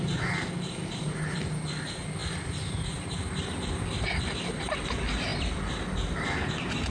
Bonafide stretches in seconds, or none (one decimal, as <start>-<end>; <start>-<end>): 0.0-6.9